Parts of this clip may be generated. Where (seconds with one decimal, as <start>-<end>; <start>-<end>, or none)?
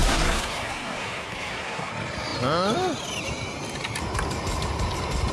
0.0-1.9